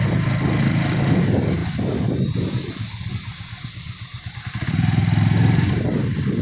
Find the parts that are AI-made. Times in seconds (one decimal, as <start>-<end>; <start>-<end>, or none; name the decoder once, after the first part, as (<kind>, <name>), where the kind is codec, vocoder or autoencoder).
none